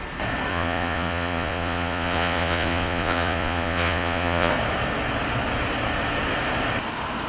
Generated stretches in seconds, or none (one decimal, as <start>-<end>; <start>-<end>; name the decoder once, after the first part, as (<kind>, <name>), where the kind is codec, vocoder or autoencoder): 0.5-4.5 (vocoder, Vocos)